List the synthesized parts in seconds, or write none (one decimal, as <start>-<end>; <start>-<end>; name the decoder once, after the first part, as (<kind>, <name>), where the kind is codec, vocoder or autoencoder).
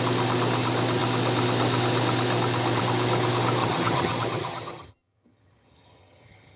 3.6-6.6 (vocoder, HiFi-GAN)